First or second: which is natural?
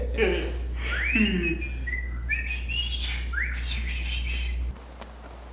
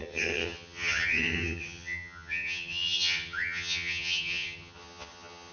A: first